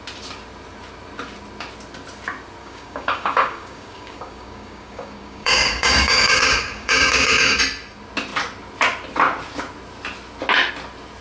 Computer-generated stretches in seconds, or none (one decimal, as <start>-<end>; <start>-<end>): 2.6-7.6